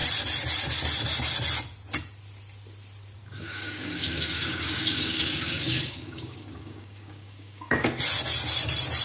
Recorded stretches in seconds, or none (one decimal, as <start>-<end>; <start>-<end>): 0.0-3.2; 8.0-9.0